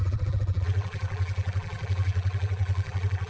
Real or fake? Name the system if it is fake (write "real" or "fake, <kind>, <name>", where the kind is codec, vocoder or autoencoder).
fake, vocoder, BigVGAN v2